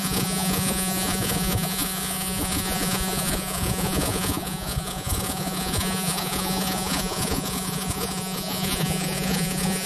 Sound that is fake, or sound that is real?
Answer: fake